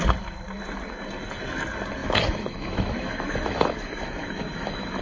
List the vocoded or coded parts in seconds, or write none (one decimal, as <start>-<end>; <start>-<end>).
2.0-5.0